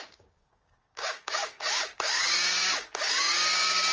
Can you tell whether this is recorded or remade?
remade